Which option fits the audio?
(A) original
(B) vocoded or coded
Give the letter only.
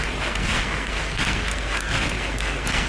B